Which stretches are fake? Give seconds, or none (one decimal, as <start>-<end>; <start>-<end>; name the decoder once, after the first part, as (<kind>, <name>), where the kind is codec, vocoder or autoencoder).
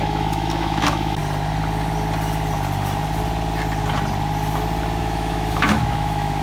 0.0-1.2 (autoencoder, DAC-VAE); 5.0-6.4